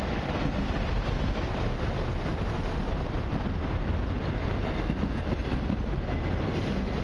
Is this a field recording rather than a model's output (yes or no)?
yes